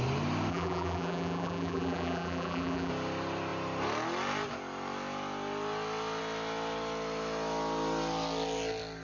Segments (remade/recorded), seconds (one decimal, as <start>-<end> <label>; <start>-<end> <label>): 0.0-0.5 recorded; 0.5-2.9 remade; 2.9-9.0 recorded

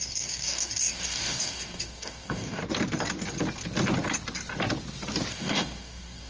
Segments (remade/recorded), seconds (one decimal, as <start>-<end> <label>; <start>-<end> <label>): 0.0-2.6 remade; 2.6-5.3 recorded; 5.3-6.3 remade